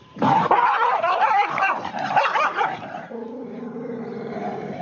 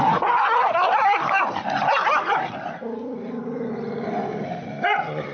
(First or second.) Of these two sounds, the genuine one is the second